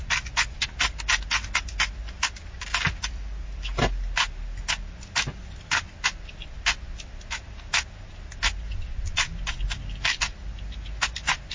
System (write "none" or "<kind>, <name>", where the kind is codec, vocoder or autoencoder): none